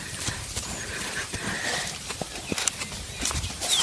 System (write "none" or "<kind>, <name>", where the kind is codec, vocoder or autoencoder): none